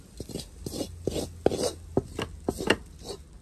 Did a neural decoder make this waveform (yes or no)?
no